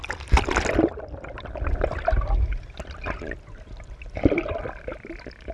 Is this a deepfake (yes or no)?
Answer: no